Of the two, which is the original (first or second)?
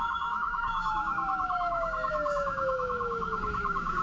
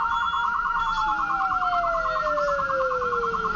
second